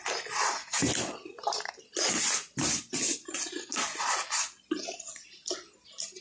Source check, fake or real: real